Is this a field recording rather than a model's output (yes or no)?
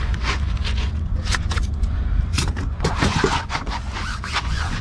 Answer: no